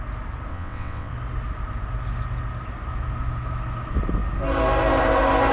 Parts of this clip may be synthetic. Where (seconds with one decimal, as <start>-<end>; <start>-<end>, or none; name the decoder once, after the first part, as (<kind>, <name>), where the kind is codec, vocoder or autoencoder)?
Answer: 0.5-1.1 (vocoder, WaveNeXt)